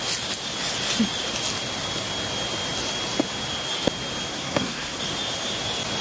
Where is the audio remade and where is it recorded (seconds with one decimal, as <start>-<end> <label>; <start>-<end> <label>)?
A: 0.0-4.3 recorded; 4.3-5.0 remade; 5.0-6.0 recorded

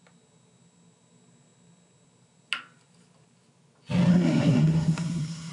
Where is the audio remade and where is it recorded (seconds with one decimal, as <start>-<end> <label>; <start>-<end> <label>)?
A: 0.0-4.1 recorded; 4.1-5.5 remade

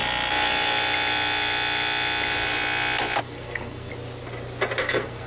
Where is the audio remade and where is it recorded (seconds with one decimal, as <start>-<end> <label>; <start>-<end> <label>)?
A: 0.0-3.2 recorded; 3.2-3.9 remade; 3.9-4.8 recorded; 4.8-5.3 remade

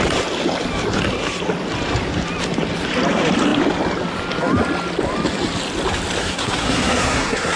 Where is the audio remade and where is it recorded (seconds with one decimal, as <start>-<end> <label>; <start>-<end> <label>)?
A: 0.0-6.2 recorded; 6.2-7.6 remade

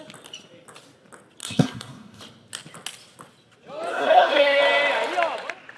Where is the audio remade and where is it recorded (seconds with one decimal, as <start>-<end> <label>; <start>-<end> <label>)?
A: 0.0-1.4 recorded; 1.4-2.2 remade; 2.2-3.9 recorded; 3.9-4.6 remade; 4.6-5.8 recorded

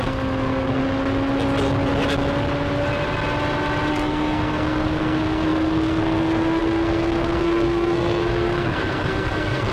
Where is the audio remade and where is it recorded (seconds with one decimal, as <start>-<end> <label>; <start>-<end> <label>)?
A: 0.0-0.8 remade; 0.8-3.9 recorded; 3.9-9.7 remade

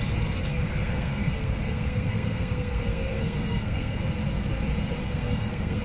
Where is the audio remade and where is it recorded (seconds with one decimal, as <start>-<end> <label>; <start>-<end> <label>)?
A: 0.0-0.5 recorded; 0.5-4.0 remade; 4.0-5.0 recorded; 5.0-5.8 remade